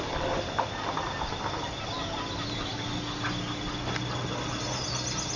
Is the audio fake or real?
real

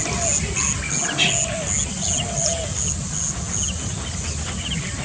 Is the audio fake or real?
real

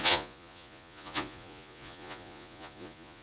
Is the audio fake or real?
fake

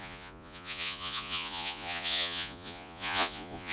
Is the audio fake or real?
fake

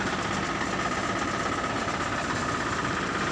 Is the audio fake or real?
real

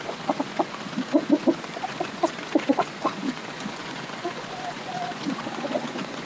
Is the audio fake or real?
fake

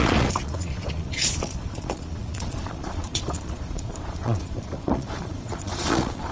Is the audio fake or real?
fake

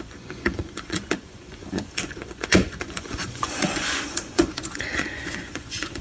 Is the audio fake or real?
fake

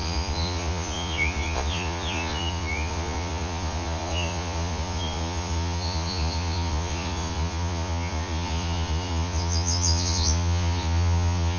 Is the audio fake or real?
fake